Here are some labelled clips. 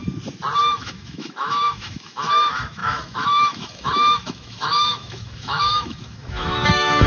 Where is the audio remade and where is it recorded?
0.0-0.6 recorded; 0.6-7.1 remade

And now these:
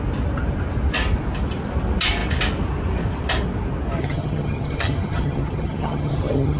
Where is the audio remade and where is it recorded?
0.0-4.0 recorded; 4.0-6.6 remade

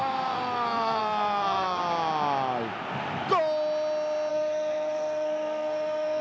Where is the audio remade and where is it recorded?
0.0-1.8 remade; 1.8-4.3 recorded; 4.3-6.2 remade